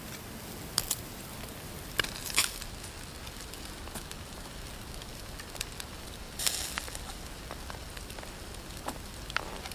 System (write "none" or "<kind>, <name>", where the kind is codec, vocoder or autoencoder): none